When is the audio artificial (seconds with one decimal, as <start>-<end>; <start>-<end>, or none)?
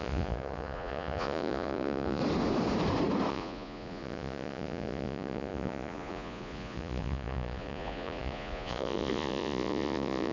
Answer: 0.0-2.2; 3.3-10.3